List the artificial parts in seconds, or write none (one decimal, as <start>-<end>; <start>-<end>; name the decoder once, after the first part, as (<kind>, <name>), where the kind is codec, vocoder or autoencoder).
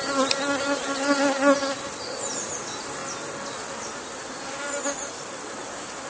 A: none